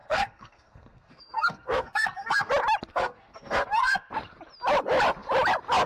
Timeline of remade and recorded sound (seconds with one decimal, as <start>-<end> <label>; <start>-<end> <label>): 0.0-2.5 remade; 2.5-2.9 recorded; 2.9-4.1 remade; 4.1-5.9 recorded